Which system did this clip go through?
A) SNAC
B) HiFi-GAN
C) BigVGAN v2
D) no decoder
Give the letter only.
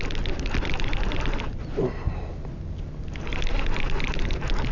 D